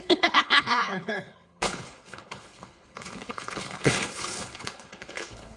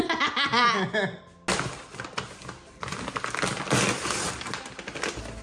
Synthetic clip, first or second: first